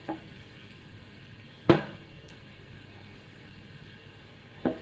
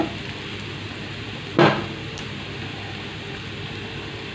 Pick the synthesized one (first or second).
first